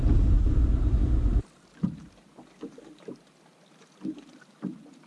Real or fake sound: real